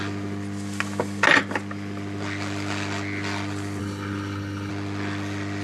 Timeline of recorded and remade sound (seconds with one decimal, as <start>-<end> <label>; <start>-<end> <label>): 0.0-3.8 recorded; 3.8-4.7 remade; 4.7-5.6 recorded